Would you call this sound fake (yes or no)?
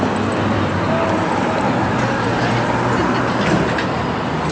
no